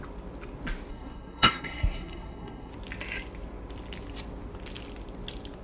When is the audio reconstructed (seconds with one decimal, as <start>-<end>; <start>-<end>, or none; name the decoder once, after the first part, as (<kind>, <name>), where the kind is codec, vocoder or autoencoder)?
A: 0.9-2.7 (codec, SNAC)